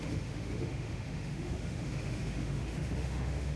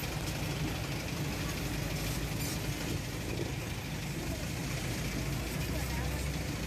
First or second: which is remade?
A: first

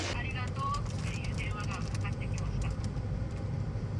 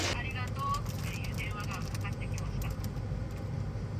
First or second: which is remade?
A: first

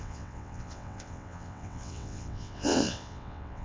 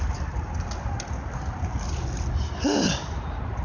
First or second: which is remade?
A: first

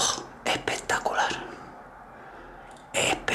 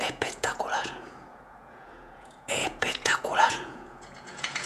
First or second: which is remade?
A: second